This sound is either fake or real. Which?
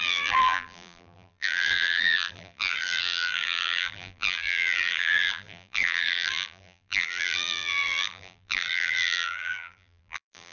fake